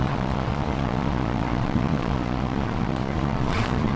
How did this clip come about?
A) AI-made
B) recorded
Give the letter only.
A